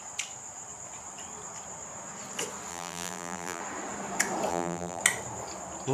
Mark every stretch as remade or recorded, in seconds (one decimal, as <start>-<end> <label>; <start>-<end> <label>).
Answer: 0.0-2.7 recorded; 2.7-3.6 remade; 3.6-4.5 recorded; 4.5-5.0 remade; 5.0-5.9 recorded